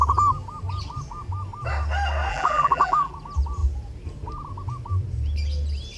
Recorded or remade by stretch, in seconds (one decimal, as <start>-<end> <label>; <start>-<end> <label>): 0.0-2.3 recorded; 2.3-3.1 remade; 3.1-6.0 recorded